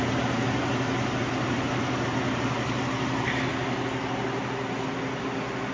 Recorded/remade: recorded